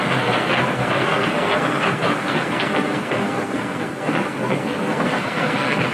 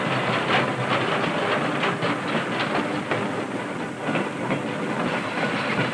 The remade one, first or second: first